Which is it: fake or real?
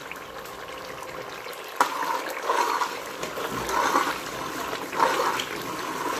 real